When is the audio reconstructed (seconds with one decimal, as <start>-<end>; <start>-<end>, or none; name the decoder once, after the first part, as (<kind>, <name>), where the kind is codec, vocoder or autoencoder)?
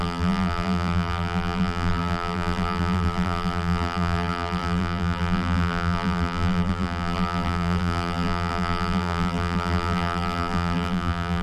0.0-11.4 (vocoder, BigVGAN v2)